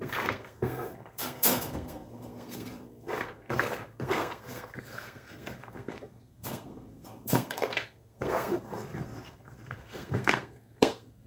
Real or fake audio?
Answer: fake